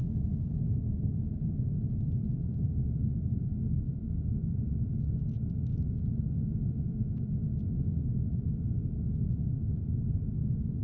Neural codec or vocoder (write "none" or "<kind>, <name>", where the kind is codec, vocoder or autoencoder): autoencoder, DAC-VAE